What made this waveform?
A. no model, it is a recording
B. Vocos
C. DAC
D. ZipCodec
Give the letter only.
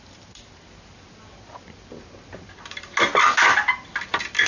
A